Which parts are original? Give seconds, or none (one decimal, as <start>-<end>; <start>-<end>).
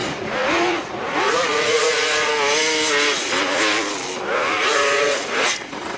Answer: 2.3-4.3